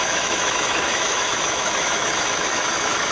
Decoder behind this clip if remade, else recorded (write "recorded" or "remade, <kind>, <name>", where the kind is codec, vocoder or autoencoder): remade, autoencoder, DAC-VAE